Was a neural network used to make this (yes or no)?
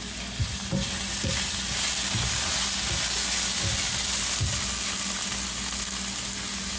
no